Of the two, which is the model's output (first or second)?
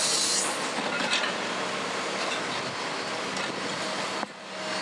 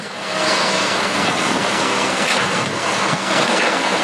second